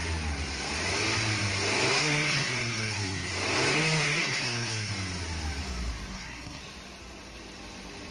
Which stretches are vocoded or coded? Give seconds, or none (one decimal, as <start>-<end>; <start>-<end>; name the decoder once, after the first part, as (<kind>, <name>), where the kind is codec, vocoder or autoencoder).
1.9-3.3 (codec, SNAC); 3.7-4.9; 6.1-6.6